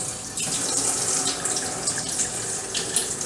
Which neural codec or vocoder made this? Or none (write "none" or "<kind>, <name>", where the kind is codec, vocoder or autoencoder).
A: none